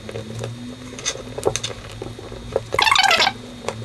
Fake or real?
real